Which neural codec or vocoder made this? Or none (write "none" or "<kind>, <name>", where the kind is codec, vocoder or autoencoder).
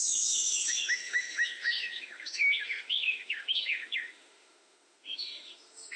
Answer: autoencoder, DAC-VAE